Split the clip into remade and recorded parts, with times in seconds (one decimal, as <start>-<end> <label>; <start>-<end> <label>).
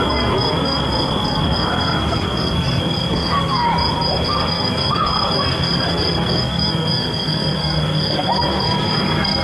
0.0-3.7 remade; 3.7-4.2 recorded; 4.2-9.4 remade